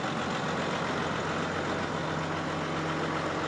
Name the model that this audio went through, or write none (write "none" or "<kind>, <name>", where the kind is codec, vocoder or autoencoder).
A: none